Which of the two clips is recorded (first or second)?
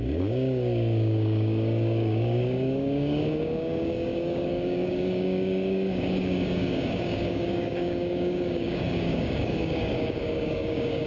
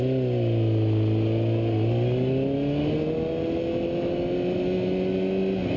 second